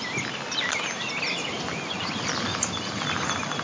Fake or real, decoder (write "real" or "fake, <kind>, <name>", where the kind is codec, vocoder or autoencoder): real